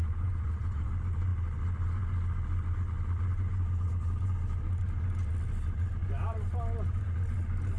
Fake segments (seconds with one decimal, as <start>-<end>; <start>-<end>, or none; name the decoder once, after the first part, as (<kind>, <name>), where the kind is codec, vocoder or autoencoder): 0.0-0.9 (vocoder, Vocos)